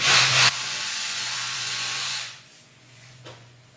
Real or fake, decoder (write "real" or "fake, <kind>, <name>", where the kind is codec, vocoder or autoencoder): fake, vocoder, Vocos